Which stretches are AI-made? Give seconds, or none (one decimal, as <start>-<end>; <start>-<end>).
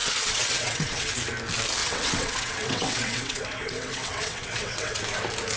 0.0-1.1; 1.8-5.0